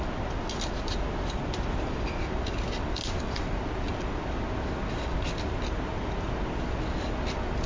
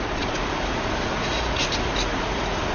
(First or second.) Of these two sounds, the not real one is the second